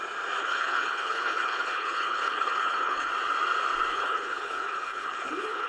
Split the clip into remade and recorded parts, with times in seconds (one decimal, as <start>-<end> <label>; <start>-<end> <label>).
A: 0.0-0.4 recorded; 0.4-3.1 remade; 3.1-3.9 recorded; 3.9-5.7 remade